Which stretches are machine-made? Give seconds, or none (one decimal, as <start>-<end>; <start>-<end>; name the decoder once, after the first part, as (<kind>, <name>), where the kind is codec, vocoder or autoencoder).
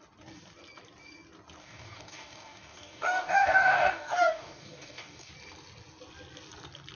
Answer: 1.6-5.3 (codec, DAC)